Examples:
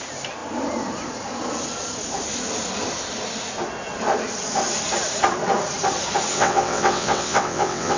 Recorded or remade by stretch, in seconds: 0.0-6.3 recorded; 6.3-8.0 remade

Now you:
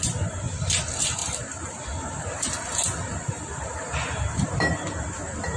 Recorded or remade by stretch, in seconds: 0.0-5.6 recorded

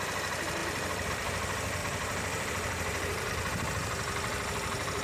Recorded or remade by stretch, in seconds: 0.0-0.6 recorded; 0.6-1.1 remade; 1.1-1.8 recorded; 1.8-3.3 remade; 3.3-5.0 recorded

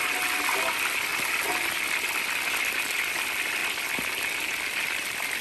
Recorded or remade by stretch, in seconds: 0.0-5.4 recorded

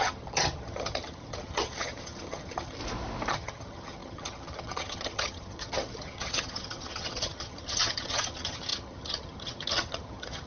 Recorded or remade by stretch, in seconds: 0.0-2.8 remade; 2.8-3.3 recorded; 3.3-10.5 remade

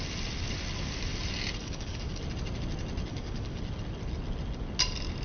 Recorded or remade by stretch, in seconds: 0.0-1.6 recorded; 1.6-2.2 remade; 2.2-3.1 recorded; 3.1-3.6 remade; 3.6-5.2 recorded

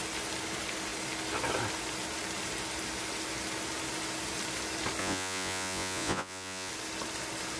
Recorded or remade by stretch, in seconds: 0.0-5.0 recorded; 5.0-6.7 remade; 6.7-7.6 recorded